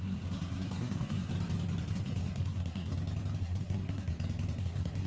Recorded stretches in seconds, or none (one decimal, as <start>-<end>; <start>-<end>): 1.3-1.9; 2.9-3.4; 4.1-4.6